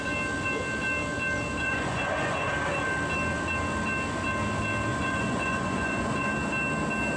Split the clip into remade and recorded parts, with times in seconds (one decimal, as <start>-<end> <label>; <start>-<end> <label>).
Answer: 0.0-1.6 recorded; 1.6-2.5 remade; 2.5-4.9 recorded; 4.9-6.3 remade; 6.3-7.2 recorded